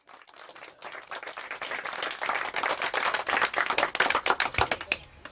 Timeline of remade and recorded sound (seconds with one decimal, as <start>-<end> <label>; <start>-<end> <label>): 0.0-5.3 recorded